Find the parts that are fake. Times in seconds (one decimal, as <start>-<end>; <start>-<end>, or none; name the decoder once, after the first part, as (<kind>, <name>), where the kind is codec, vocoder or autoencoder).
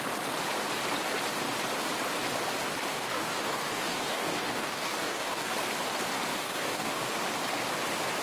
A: 2.9-5.5 (codec, DAC); 6.3-7.0